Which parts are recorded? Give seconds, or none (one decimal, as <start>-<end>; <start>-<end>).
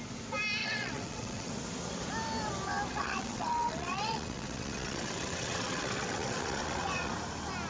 0.0-0.6; 1.5-2.9; 7.1-7.7